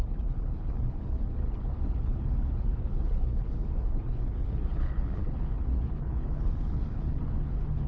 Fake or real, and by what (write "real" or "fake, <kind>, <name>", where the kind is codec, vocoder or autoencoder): fake, codec, HILCodec